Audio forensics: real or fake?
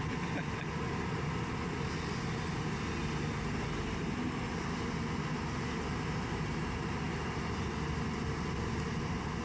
real